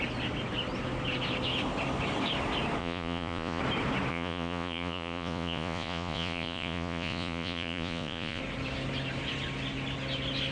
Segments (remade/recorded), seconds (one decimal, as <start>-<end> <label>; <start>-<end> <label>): 0.0-2.8 recorded; 2.8-3.6 remade; 3.6-4.1 recorded; 4.1-8.4 remade; 8.4-10.5 recorded